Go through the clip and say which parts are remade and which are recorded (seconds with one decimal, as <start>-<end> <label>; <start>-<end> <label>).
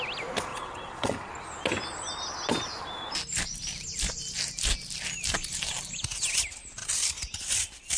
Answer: 0.0-0.5 recorded; 0.5-1.3 remade; 1.3-8.0 recorded